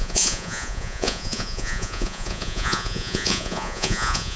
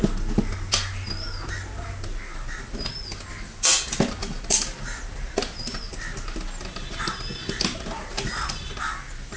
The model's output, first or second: first